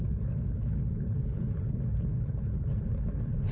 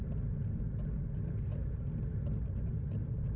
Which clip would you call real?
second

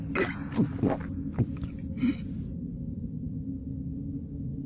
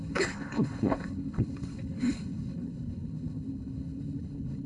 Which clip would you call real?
first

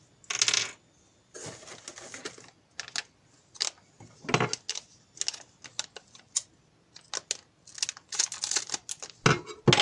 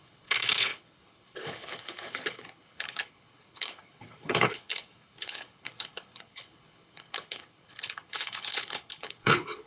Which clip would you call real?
first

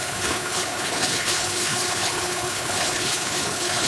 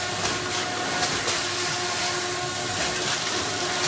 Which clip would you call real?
second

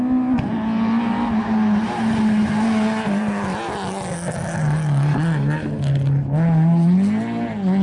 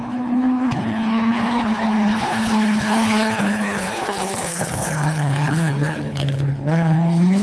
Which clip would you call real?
first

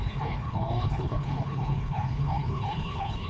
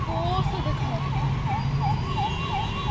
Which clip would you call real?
second